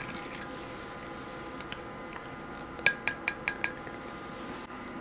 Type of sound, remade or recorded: recorded